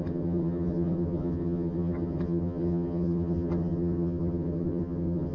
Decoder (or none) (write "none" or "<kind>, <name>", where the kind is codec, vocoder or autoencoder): vocoder, HiFi-GAN